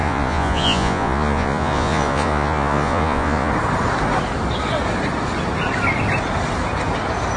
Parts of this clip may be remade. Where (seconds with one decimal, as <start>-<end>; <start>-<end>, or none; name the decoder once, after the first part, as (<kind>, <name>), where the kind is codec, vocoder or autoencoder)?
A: 0.0-3.5 (vocoder, Vocos)